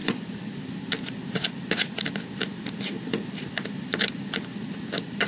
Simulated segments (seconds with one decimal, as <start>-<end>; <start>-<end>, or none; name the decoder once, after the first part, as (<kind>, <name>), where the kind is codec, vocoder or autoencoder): 0.0-0.7 (vocoder, BigVGAN v2)

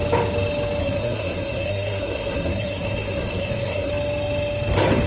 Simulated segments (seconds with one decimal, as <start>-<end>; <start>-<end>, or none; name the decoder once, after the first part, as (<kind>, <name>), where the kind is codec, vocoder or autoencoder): 0.8-3.9 (codec, SNAC)